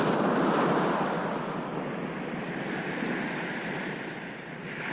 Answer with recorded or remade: recorded